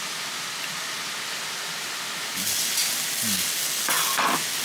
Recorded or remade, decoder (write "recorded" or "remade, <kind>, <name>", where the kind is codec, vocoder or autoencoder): recorded